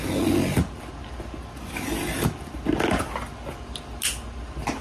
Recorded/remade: recorded